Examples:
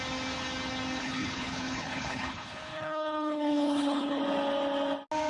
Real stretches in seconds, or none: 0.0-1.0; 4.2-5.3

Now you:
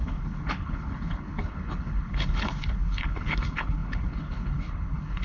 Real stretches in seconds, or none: none

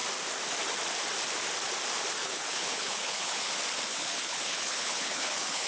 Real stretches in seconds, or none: 0.0-2.2; 3.5-3.9

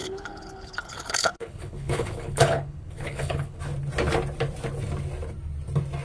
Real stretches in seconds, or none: 3.6-6.0

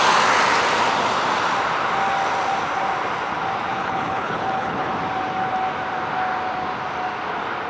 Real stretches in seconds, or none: 0.0-3.7; 4.9-7.7